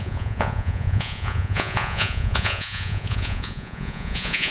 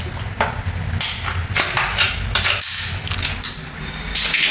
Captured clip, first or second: second